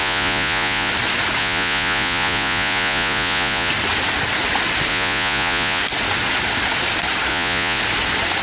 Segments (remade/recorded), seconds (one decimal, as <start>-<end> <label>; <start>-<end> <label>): 0.0-0.9 remade; 0.9-1.4 recorded; 1.4-3.7 remade; 3.7-4.9 recorded; 4.9-5.8 remade; 5.8-7.3 recorded; 7.3-7.8 remade; 7.8-8.4 recorded